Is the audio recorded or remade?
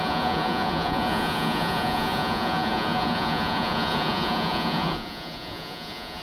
remade